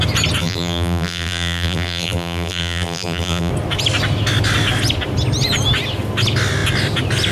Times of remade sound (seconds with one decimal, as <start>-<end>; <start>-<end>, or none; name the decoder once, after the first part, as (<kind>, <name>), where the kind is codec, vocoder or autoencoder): 0.4-3.5 (vocoder, BigVGAN v2)